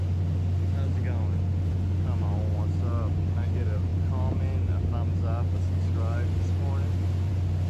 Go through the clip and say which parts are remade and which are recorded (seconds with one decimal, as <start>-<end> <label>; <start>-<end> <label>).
0.0-7.7 recorded